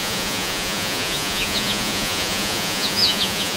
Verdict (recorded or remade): remade